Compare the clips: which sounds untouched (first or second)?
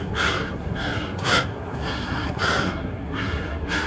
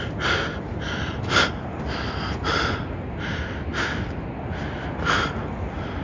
second